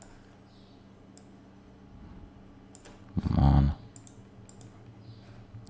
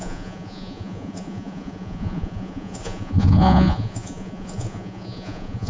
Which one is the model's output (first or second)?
second